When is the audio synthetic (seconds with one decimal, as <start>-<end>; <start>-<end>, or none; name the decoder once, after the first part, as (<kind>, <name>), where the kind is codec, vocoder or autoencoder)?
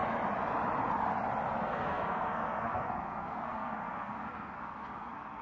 1.6-5.4 (codec, SNAC)